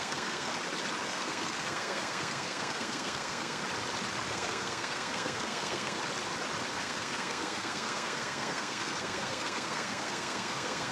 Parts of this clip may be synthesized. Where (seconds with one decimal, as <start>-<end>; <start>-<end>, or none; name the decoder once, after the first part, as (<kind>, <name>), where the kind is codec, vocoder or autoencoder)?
0.0-0.5 (codec, SNAC); 1.1-3.6; 4.3-6.0; 6.7-10.9